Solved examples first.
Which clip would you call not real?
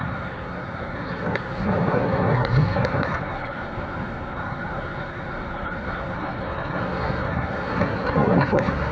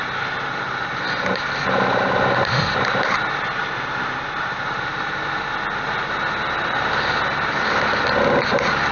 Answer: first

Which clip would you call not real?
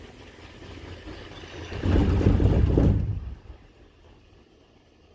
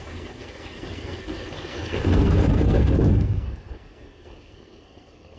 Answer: second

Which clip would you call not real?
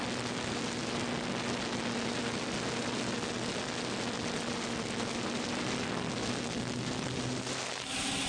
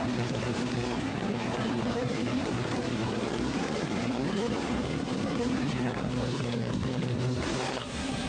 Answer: second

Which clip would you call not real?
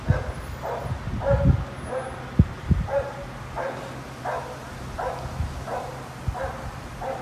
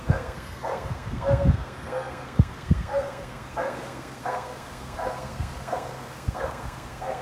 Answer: second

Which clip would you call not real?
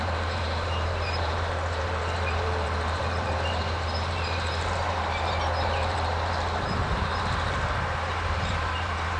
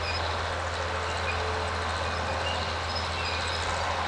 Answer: first